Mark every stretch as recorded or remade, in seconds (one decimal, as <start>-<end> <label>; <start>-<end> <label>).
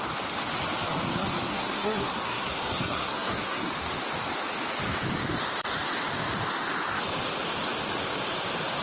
0.0-1.5 recorded; 1.5-3.7 remade; 3.7-8.8 recorded